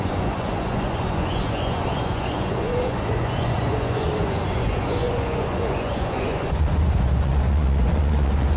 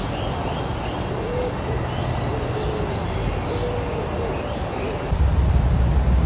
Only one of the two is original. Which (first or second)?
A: second